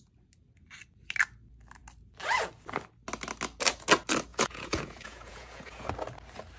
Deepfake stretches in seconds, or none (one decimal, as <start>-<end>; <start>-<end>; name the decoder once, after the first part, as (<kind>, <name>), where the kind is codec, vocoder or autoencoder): 4.3-5.9 (vocoder, Vocos)